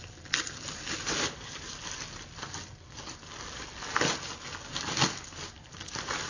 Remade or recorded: recorded